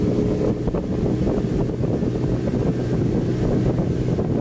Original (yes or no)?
yes